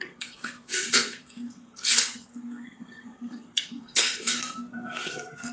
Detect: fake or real fake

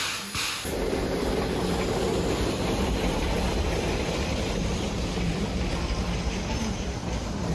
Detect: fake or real real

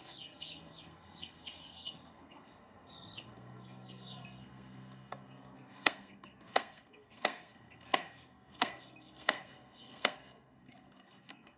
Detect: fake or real fake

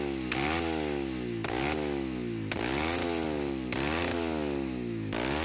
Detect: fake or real real